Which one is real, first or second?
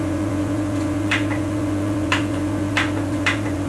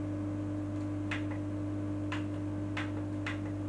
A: second